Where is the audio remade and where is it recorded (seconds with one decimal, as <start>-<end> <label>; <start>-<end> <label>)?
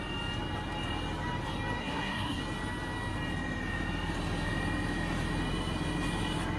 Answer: 0.0-1.8 recorded; 1.8-2.4 remade; 2.4-6.6 recorded